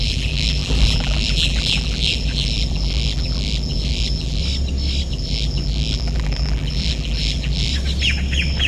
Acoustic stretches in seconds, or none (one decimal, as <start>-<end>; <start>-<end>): 4.4-5.1; 7.7-8.7